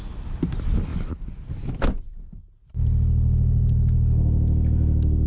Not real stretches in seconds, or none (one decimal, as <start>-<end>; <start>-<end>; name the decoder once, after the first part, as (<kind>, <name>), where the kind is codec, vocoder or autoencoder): none